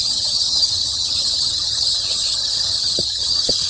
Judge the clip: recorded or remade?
remade